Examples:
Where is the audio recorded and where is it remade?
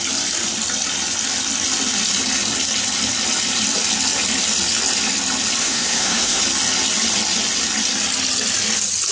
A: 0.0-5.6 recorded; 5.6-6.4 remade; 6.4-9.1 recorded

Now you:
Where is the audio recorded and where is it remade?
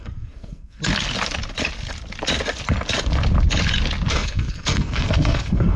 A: 0.0-0.8 remade; 0.8-4.1 recorded; 4.1-5.8 remade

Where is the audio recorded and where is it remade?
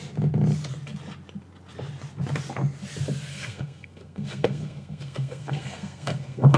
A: 0.0-3.3 recorded; 3.3-6.6 remade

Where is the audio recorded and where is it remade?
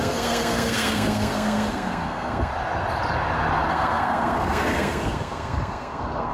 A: 0.0-2.5 remade; 2.5-3.7 recorded; 3.7-6.3 remade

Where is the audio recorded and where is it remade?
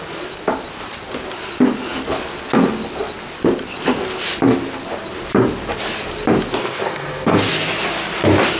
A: 0.0-6.6 recorded; 6.6-7.4 remade; 7.4-8.6 recorded